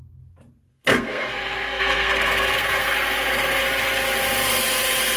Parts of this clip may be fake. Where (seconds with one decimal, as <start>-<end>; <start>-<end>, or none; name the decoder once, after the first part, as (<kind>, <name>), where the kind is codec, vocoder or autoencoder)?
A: 0.7-3.6 (codec, SNAC)